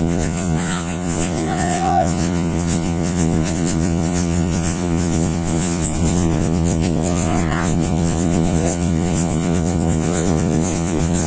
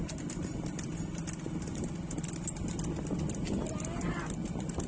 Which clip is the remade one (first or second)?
first